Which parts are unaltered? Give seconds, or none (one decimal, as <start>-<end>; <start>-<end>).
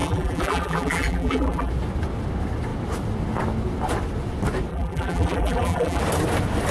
1.7-4.7; 6.0-6.7